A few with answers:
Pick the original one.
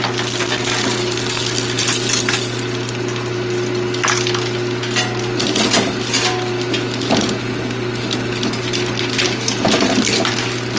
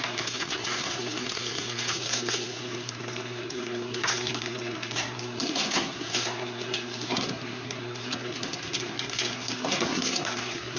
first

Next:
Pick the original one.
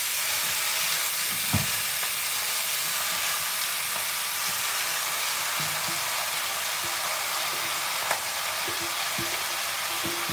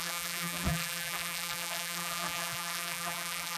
first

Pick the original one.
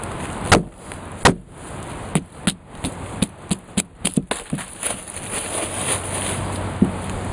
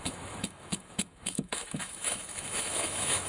first